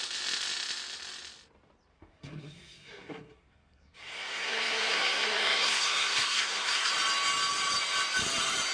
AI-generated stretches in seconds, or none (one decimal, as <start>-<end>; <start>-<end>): 1.9-6.9